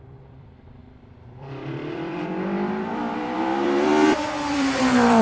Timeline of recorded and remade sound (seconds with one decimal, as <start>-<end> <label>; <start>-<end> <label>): 0.0-5.2 remade